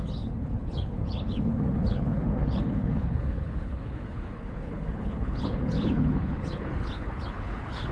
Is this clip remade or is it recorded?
remade